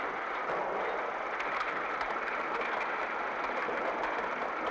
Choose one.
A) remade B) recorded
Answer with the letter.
B